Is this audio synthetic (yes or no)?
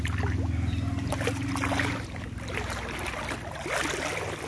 no